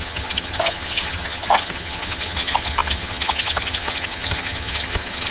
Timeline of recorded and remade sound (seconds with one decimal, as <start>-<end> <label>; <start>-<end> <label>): 0.0-5.3 remade

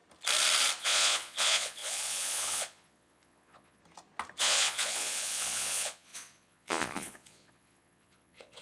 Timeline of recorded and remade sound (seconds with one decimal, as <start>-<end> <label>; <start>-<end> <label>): 0.0-0.8 recorded; 0.8-3.8 remade; 3.8-4.4 recorded; 4.4-8.6 remade

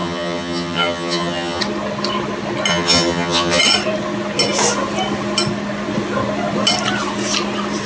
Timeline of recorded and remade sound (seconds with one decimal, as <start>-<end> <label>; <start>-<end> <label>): 0.0-1.6 remade; 1.6-2.7 recorded; 2.7-3.6 remade; 3.6-7.9 recorded

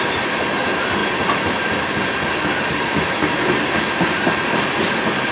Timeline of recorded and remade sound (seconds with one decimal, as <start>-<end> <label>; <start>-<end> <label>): 0.0-5.3 recorded

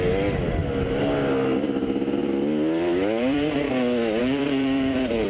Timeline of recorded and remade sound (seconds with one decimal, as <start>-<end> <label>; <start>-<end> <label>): 0.0-2.2 recorded; 2.2-3.7 remade; 3.7-4.2 recorded; 4.2-5.3 remade

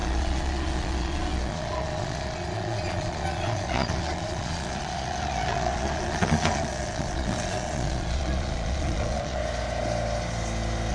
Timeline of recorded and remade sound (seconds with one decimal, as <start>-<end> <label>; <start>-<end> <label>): 0.0-9.4 remade; 9.4-10.9 recorded

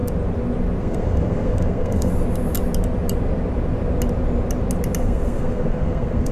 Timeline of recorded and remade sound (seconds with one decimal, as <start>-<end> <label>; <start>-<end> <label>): 0.0-0.8 recorded; 0.8-2.1 remade; 2.1-5.0 recorded; 5.0-6.3 remade

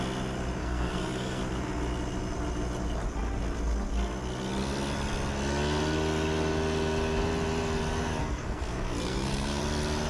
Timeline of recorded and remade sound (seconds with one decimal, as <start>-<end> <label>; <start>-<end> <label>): 0.0-0.6 recorded; 0.6-1.4 remade; 1.4-8.2 recorded; 8.2-9.6 remade; 9.6-10.1 recorded